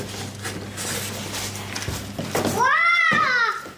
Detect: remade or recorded recorded